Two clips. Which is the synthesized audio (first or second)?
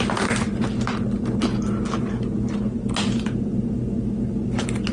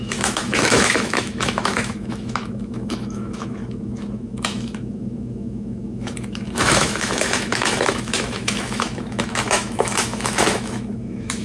second